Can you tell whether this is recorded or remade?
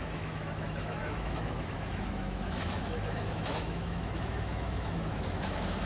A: remade